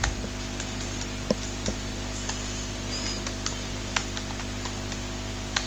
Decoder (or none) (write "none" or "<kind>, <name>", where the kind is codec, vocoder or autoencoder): none